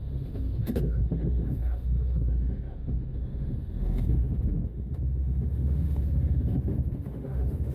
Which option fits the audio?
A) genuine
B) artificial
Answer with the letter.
B